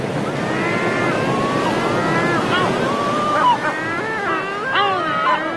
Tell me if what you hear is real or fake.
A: real